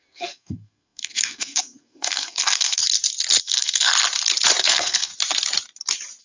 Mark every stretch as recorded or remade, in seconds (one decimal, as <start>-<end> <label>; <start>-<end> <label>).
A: 0.0-2.8 remade; 2.8-3.4 recorded; 3.4-3.9 remade; 3.9-4.6 recorded; 4.6-5.1 remade; 5.1-6.2 recorded

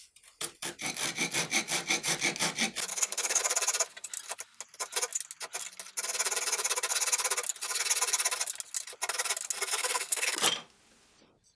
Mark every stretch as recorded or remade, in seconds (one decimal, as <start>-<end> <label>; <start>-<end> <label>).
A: 0.0-2.9 recorded; 2.9-3.4 remade; 3.4-9.8 recorded; 9.8-10.4 remade; 10.4-11.6 recorded

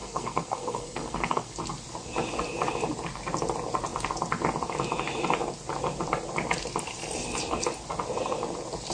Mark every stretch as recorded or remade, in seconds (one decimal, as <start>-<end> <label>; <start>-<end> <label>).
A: 0.0-1.6 remade; 1.6-8.9 recorded